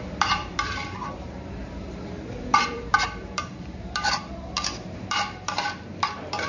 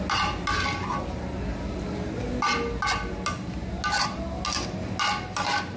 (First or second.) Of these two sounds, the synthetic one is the first